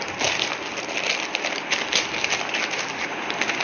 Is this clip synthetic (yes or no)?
no